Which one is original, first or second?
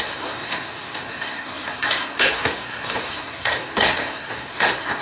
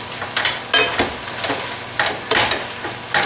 second